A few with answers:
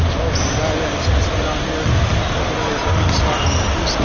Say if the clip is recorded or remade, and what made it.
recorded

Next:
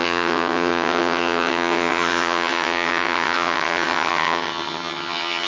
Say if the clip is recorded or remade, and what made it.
remade, vocoder, HiFi-GAN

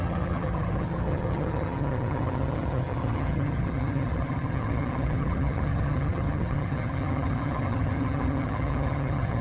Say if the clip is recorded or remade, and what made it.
remade, vocoder, HiFi-GAN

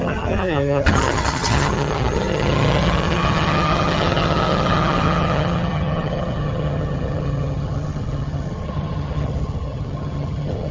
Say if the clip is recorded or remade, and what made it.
remade, vocoder, HiFi-GAN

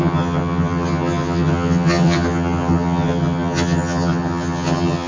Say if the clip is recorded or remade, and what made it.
remade, vocoder, HiFi-GAN